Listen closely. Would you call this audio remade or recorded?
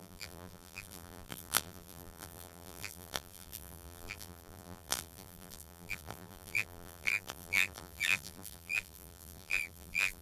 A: remade